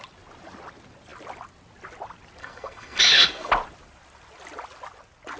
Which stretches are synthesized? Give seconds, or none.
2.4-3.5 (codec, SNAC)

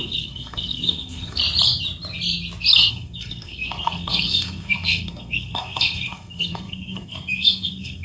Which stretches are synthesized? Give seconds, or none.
0.0-1.4 (codec, SNAC); 2.9-8.0

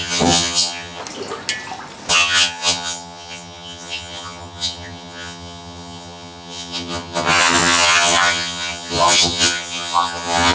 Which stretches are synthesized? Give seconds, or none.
0.0-1.0 (vocoder, HiFi-GAN); 2.1-10.5

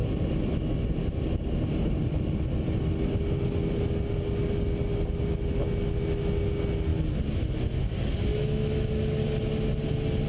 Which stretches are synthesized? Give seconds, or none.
8.3-8.9 (autoencoder, DAC-VAE)

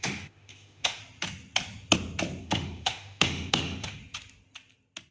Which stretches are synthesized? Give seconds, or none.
0.0-1.0 (autoencoder, DAC-VAE); 2.4-4.0